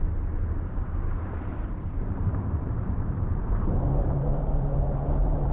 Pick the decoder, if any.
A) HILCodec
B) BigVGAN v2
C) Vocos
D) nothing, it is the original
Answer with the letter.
B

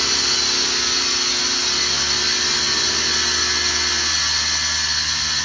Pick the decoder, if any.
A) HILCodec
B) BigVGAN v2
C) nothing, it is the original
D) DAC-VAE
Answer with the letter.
C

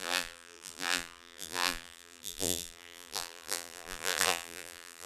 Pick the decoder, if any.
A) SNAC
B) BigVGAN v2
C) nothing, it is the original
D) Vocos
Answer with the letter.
B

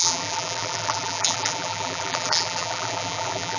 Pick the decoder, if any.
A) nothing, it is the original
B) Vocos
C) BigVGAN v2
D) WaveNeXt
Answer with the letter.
C